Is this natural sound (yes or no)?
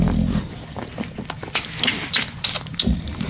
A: yes